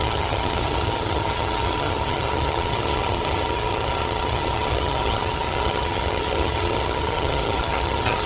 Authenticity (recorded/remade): remade